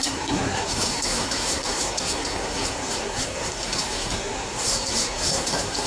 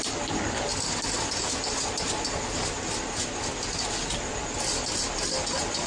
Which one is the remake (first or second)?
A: first